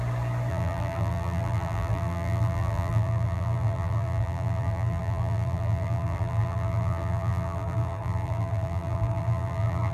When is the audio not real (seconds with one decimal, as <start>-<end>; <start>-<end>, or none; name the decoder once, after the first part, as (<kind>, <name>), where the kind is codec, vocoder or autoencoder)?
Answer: 0.5-9.9 (vocoder, BigVGAN v2)